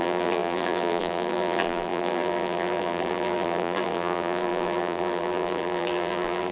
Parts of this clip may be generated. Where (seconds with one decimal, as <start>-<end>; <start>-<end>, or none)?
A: 0.0-6.5